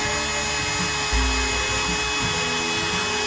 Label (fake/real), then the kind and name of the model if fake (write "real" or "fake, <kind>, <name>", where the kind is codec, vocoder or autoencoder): real